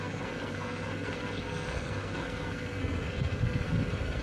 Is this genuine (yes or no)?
no